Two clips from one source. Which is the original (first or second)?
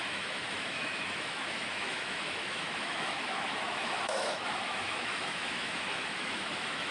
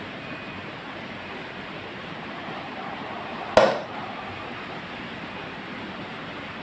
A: second